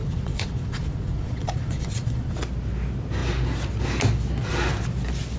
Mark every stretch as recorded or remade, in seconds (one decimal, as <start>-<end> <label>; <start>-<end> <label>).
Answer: 0.0-2.4 remade; 2.4-5.4 recorded